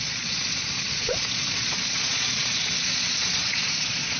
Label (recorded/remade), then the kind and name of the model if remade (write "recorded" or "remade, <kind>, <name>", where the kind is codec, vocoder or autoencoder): remade, vocoder, Vocos